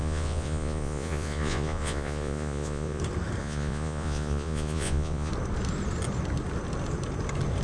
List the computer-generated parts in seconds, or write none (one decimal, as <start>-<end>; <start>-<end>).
0.0-3.0; 3.4-5.3